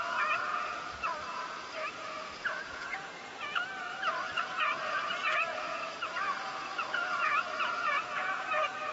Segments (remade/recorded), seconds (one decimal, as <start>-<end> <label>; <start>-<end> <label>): 0.0-3.6 remade; 3.6-4.1 recorded; 4.1-8.9 remade